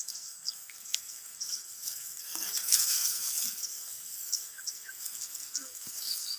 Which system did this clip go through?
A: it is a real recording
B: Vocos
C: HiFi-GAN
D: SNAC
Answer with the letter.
D